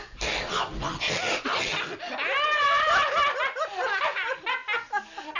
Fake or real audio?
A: real